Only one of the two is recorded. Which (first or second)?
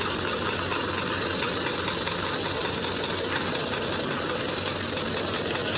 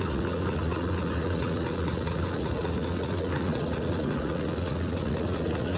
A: first